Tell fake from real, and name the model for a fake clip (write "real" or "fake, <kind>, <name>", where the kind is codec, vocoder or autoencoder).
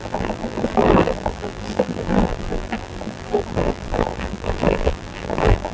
fake, vocoder, BigVGAN v2